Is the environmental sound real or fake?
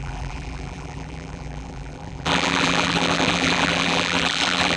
fake